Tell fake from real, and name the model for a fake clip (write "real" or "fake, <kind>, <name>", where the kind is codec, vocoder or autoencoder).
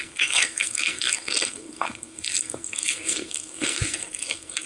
fake, codec, SNAC